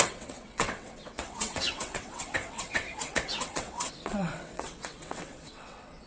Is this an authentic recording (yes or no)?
no